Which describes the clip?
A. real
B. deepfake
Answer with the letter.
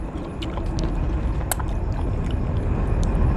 A